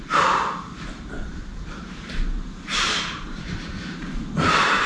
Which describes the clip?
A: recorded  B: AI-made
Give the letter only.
B